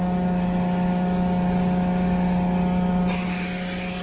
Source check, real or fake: real